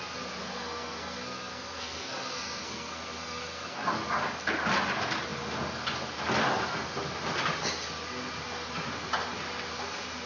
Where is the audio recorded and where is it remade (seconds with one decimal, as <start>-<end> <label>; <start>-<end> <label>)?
0.0-0.4 recorded; 0.4-3.8 remade; 3.8-10.3 recorded